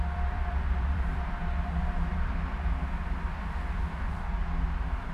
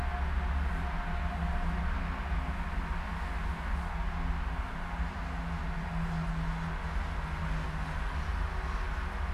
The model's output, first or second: first